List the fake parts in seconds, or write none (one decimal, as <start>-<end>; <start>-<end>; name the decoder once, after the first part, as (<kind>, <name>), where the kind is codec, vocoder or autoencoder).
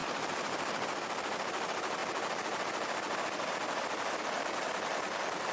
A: 0.0-5.5 (vocoder, BigVGAN v2)